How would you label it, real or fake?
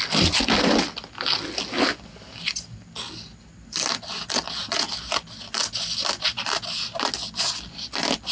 real